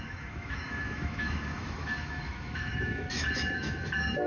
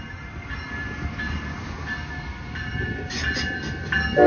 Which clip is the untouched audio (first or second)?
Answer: second